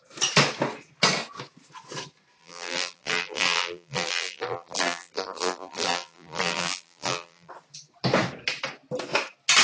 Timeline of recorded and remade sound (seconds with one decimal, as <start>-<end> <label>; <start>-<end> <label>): 0.0-2.4 recorded; 2.4-7.5 remade; 7.5-9.6 recorded